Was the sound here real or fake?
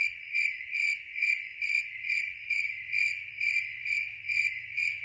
fake